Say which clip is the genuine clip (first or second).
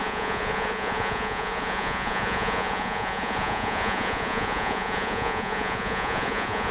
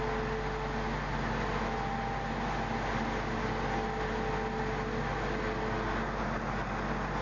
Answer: second